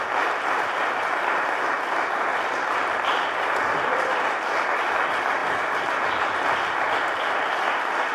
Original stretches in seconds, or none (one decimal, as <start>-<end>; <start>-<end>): 0.0-2.3; 4.1-8.1

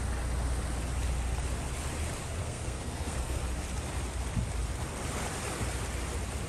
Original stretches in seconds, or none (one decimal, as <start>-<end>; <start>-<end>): 0.0-2.4; 3.4-6.5

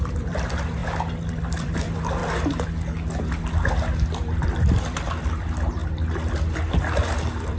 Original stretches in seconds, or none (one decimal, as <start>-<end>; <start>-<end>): 0.8-1.3; 2.2-4.1

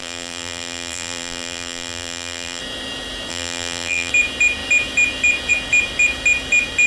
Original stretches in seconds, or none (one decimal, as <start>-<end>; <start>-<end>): 2.6-3.3; 4.1-6.9

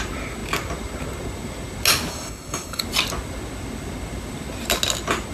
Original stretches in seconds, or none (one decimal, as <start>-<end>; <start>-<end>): 0.0-2.1; 2.8-5.3

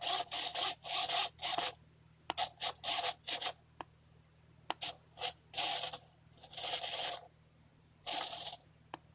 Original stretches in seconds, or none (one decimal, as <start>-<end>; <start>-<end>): 0.0-7.7; 8.7-9.1